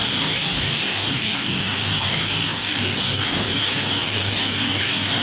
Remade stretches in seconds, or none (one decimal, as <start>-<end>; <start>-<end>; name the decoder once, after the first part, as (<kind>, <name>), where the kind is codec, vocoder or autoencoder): 0.0-5.2 (codec, DAC)